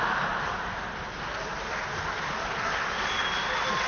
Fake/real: real